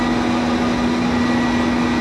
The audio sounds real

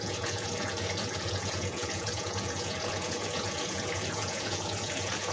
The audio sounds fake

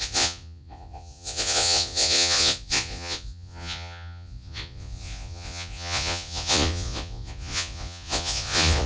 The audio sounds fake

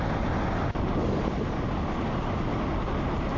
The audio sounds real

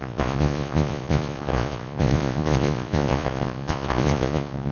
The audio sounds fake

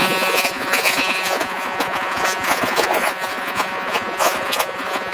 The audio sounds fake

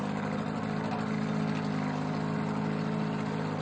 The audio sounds real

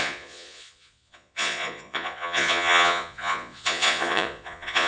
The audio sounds fake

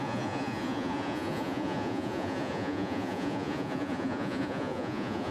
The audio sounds fake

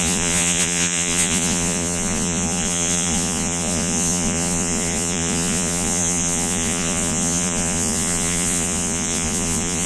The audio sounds fake